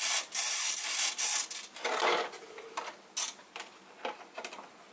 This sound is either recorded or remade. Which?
recorded